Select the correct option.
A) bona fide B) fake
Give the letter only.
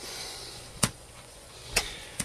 B